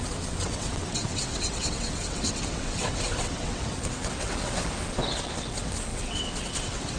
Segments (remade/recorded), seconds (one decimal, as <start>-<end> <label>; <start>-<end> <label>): 0.0-7.0 remade